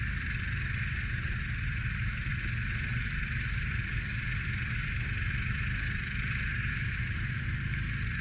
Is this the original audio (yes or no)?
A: yes